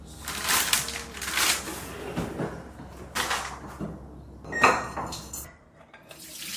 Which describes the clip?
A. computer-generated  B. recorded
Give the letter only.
B